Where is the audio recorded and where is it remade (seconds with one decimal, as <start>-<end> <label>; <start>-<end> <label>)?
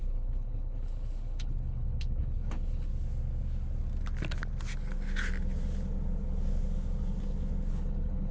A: 0.0-2.9 remade; 2.9-7.7 recorded; 7.7-8.3 remade